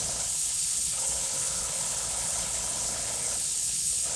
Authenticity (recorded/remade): remade